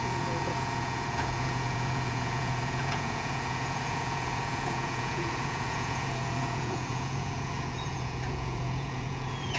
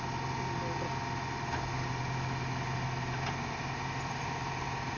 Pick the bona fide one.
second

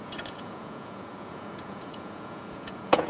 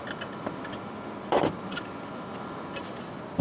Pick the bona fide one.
second